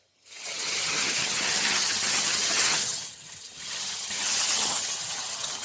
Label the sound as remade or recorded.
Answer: remade